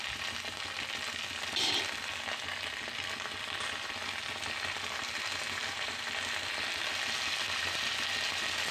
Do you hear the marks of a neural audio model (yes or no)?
no